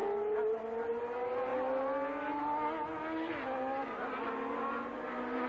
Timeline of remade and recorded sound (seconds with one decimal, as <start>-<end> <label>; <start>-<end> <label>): 0.0-5.5 recorded